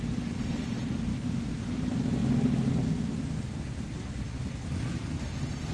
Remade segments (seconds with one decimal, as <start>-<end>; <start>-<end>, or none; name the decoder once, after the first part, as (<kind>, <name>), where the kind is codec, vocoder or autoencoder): 1.1-1.8 (autoencoder, DAC-VAE)